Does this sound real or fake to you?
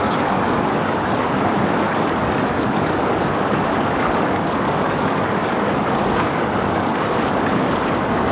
fake